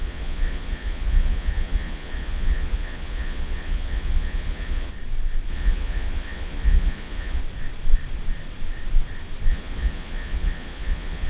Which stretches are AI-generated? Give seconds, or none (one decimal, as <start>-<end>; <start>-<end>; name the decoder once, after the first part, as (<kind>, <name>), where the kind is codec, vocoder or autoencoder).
0.0-4.9 (vocoder, Vocos); 5.5-7.4; 9.5-11.3